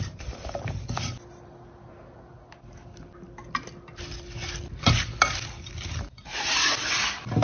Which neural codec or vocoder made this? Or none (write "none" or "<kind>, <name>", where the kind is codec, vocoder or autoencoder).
none